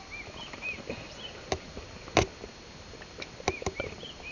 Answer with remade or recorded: recorded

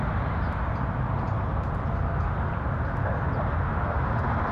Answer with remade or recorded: recorded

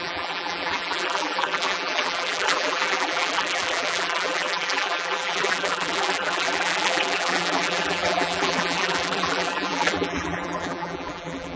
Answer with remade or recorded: remade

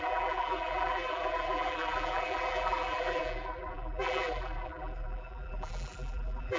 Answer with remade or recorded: remade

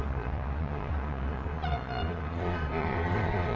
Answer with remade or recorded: remade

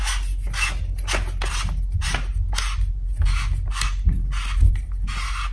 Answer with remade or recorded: recorded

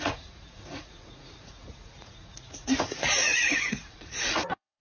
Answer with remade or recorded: remade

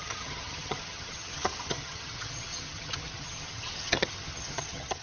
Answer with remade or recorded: remade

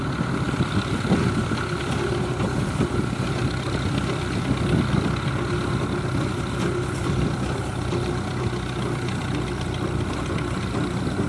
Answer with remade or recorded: recorded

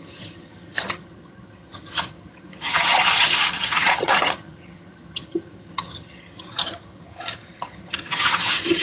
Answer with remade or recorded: remade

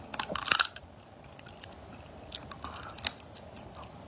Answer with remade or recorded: recorded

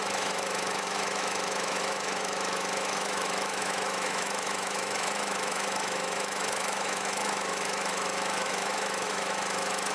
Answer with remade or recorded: remade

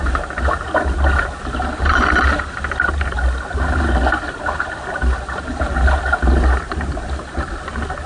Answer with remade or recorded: recorded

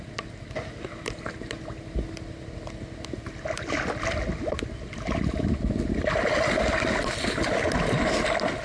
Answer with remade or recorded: recorded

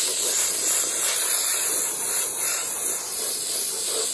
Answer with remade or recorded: recorded